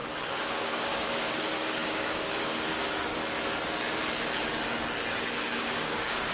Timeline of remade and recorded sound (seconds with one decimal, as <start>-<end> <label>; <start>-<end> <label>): 0.0-3.2 remade; 3.2-5.1 recorded; 5.1-6.3 remade